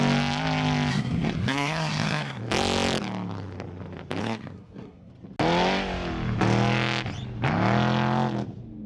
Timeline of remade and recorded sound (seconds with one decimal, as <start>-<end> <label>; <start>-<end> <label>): 0.0-0.9 recorded; 0.9-2.4 remade; 2.4-4.2 recorded; 4.2-5.1 remade; 5.1-8.9 recorded